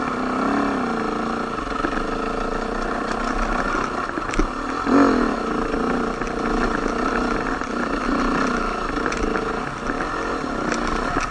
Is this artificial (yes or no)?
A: no